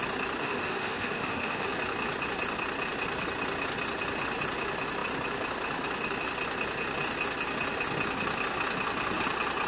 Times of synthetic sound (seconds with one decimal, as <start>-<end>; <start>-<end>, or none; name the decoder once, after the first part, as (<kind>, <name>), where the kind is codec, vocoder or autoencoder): 0.4-1.7 (autoencoder, DAC-VAE)